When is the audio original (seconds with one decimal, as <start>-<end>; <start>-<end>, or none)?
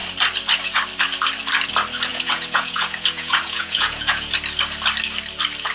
0.0-2.1; 4.3-5.7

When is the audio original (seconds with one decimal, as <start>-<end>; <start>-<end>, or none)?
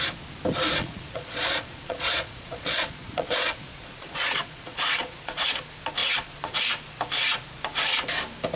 0.0-0.8; 5.5-6.0; 6.6-8.6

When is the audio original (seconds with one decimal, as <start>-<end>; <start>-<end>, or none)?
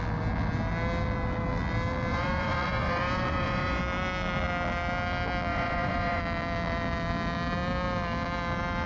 0.0-2.1; 3.8-5.5; 6.2-8.9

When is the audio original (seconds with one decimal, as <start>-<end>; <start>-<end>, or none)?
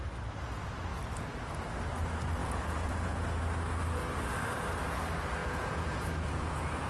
0.0-2.4; 3.4-5.4